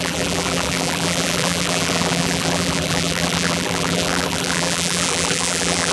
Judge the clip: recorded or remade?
remade